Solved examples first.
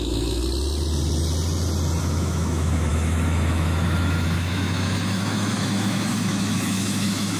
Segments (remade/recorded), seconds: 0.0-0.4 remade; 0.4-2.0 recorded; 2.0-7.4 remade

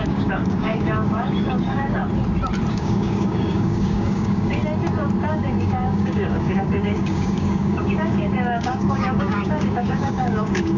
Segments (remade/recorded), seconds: 0.0-2.0 remade; 2.0-2.7 recorded; 2.7-4.6 remade; 4.6-5.3 recorded; 5.3-10.8 remade

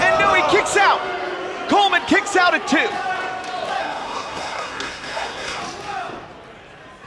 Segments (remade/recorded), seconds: 0.0-3.8 recorded; 3.8-5.6 remade; 5.6-7.1 recorded

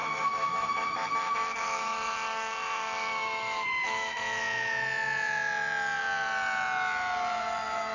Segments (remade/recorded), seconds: 0.0-4.4 remade; 4.4-7.9 recorded

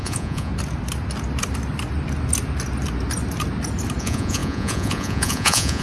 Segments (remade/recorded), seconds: 0.0-0.5 remade; 0.5-4.0 recorded; 4.0-5.8 remade

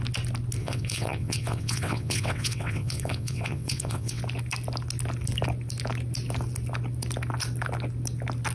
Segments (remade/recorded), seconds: 0.0-0.6 recorded; 0.6-4.2 remade; 4.2-8.5 recorded